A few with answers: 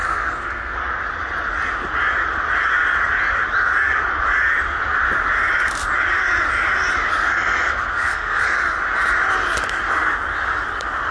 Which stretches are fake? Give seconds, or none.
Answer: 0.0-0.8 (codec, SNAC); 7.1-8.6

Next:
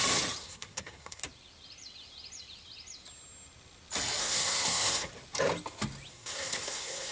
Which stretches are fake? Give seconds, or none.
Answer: 0.4-1.2 (codec, SNAC); 4.2-5.1; 6.1-7.1

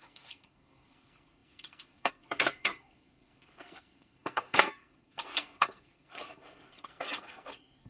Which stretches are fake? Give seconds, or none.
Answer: 0.0-7.9 (codec, SNAC)